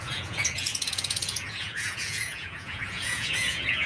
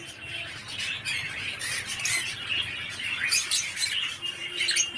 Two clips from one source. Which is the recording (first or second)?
second